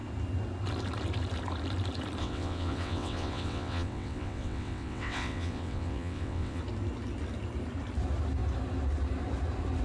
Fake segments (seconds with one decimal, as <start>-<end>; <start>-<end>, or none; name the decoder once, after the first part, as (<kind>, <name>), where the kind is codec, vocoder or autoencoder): 2.2-6.6 (vocoder, WaveNeXt)